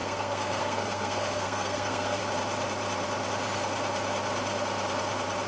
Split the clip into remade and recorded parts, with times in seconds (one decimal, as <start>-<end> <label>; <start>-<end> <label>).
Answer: 0.0-2.2 remade; 2.2-5.5 recorded